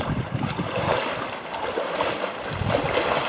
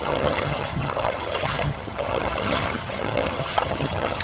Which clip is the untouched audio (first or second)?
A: first